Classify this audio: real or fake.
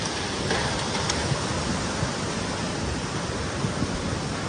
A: real